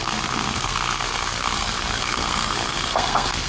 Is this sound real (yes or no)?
no